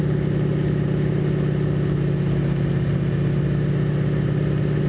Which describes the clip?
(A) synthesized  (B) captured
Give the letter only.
B